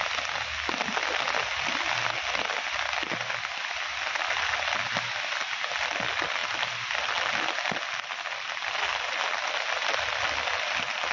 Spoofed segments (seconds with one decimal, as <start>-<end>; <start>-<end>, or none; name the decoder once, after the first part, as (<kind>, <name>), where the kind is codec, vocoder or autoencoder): none